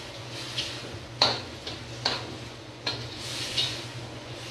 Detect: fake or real fake